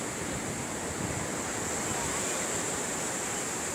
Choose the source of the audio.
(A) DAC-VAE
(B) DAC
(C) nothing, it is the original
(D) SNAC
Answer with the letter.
C